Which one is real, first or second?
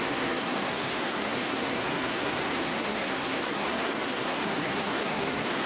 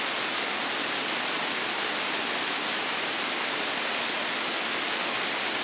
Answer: second